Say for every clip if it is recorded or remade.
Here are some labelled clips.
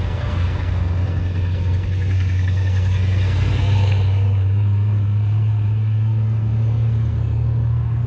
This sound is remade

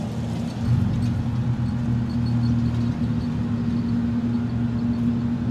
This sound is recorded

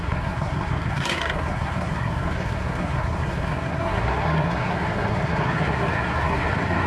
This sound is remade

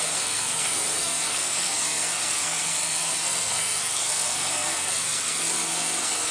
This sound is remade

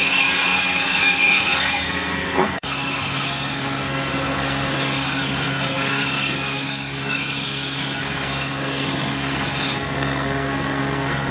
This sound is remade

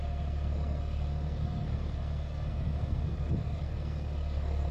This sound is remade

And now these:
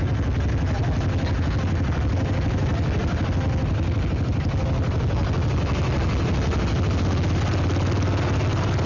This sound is recorded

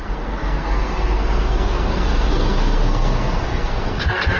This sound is remade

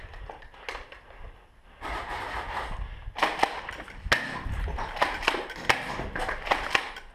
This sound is recorded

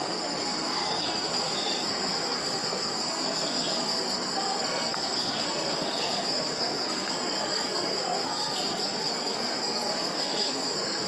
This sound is remade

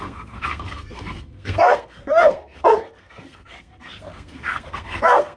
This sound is remade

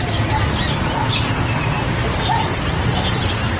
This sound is recorded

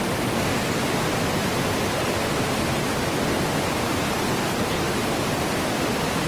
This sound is recorded